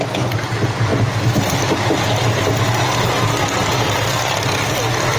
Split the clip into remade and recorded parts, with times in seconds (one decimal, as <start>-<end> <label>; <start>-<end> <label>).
0.0-0.9 recorded; 0.9-1.4 remade; 1.4-5.2 recorded